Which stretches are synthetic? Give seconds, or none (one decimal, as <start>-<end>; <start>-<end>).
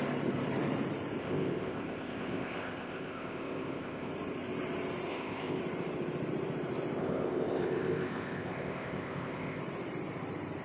1.2-4.1; 5.1-5.6; 7.0-9.6